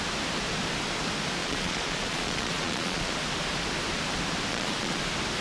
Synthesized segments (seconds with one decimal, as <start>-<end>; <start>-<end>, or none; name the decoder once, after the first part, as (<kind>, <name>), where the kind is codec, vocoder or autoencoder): 1.4-3.1 (vocoder, Vocos); 4.5-5.0